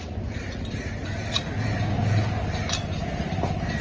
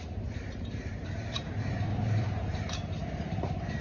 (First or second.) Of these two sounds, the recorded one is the first